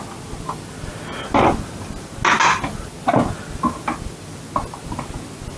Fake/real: real